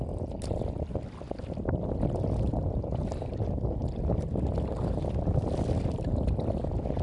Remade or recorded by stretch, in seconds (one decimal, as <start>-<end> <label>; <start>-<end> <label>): 0.0-7.0 recorded